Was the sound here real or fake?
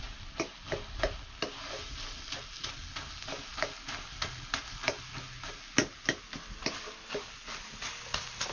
real